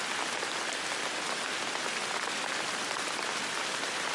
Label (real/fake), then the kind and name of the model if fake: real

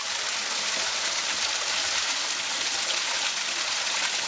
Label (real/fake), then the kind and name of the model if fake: real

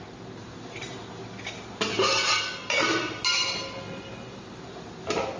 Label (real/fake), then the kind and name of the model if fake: real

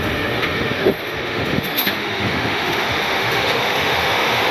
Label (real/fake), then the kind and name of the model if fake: fake, autoencoder, DAC-VAE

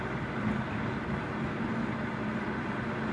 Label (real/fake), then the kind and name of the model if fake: real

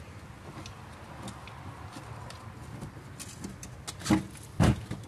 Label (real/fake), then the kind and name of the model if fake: real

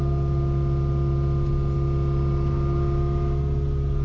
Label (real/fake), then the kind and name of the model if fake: real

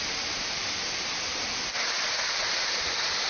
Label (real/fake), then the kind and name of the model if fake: fake, vocoder, BigVGAN v2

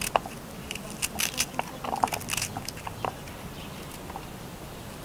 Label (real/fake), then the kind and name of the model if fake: real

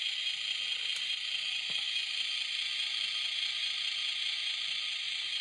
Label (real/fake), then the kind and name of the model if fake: real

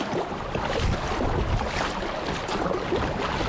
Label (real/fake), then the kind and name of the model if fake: real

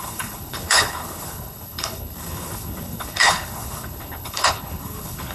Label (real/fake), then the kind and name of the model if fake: fake, codec, HILCodec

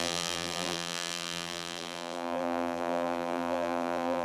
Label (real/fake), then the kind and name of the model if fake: fake, vocoder, BigVGAN v2